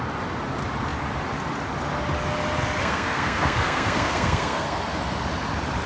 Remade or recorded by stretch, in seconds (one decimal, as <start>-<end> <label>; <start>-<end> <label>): 0.0-2.8 recorded; 2.8-4.8 remade; 4.8-5.9 recorded